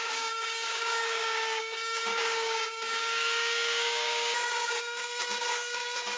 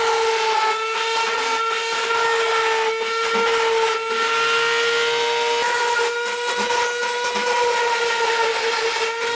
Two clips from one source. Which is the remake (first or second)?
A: first